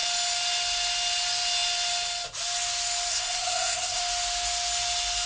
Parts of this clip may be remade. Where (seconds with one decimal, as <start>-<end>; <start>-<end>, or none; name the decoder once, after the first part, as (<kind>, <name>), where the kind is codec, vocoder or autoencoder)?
3.1-4.0 (codec, SNAC)